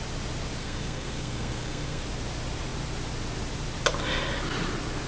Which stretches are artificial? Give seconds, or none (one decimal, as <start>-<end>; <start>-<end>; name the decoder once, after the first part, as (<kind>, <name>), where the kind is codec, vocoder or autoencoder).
0.6-2.0 (codec, SNAC)